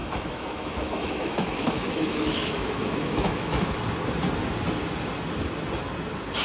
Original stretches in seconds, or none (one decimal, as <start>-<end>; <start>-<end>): 3.8-6.4